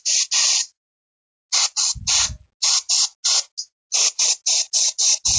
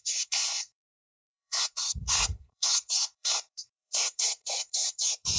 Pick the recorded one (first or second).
first